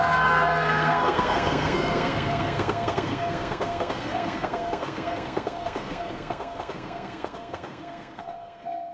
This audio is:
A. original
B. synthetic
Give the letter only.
B